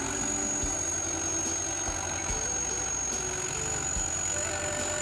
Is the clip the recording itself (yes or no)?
yes